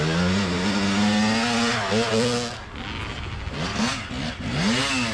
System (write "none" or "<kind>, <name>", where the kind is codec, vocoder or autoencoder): none